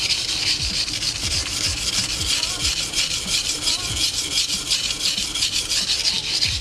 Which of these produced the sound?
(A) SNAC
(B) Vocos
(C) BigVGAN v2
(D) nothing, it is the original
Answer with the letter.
C